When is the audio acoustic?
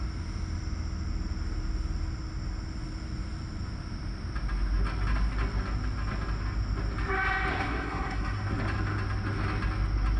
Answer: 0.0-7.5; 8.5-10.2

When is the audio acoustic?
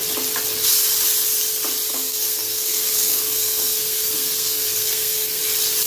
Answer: 0.0-1.9; 5.4-5.9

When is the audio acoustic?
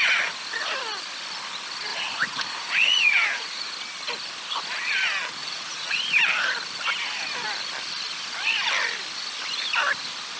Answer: 0.0-1.9; 3.7-5.4; 6.0-10.4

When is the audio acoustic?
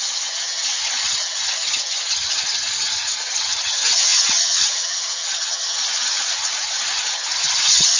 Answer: none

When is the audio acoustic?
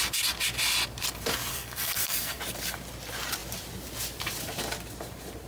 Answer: 0.0-1.5; 2.4-5.5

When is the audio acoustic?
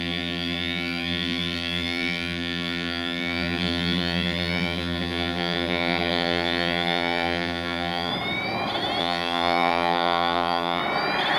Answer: 8.1-9.0; 10.8-11.4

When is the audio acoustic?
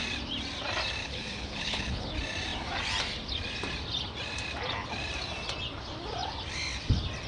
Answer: 0.0-1.0; 2.1-7.3